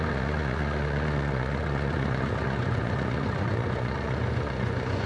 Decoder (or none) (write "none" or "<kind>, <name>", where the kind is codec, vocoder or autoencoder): vocoder, Vocos